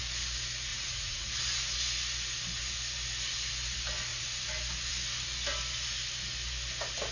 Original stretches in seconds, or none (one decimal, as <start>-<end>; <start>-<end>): 0.0-0.7; 1.4-7.1